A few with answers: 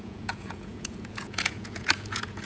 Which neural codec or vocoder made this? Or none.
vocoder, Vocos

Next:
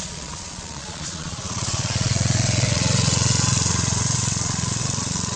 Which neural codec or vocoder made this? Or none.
vocoder, Vocos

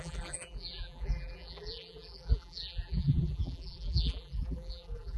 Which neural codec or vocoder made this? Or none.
vocoder, BigVGAN v2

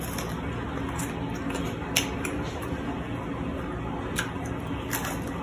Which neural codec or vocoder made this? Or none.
none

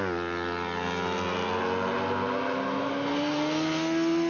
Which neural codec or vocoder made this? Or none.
none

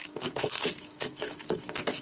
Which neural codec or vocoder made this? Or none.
codec, SNAC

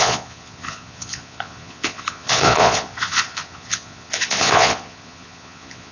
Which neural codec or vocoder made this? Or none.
vocoder, Vocos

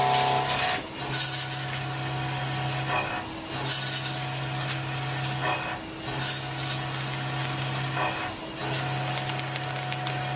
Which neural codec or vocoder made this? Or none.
none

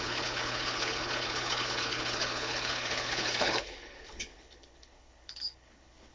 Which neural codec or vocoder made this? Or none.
codec, HILCodec